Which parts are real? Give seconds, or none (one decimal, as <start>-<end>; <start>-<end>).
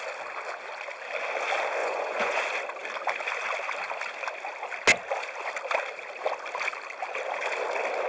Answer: 0.0-1.8; 2.4-8.1